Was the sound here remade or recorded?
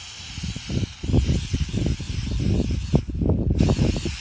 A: recorded